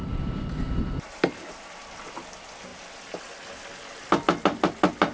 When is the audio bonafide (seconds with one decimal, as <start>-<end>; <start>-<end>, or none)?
0.0-5.1